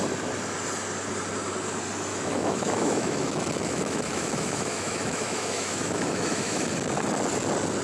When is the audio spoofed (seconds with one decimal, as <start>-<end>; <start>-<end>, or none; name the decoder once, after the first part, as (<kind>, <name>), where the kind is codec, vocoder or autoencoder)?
2.1-6.7 (autoencoder, DAC-VAE)